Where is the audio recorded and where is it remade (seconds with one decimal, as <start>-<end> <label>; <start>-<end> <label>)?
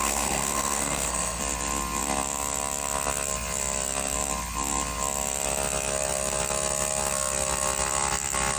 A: 0.0-1.4 remade; 1.4-8.6 recorded